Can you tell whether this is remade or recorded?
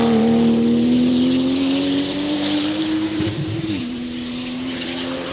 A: remade